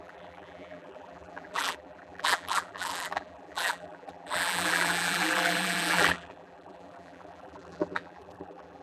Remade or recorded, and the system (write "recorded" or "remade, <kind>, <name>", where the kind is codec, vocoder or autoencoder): remade, vocoder, BigVGAN v2